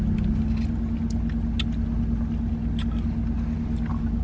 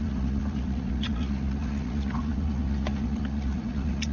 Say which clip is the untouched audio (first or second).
first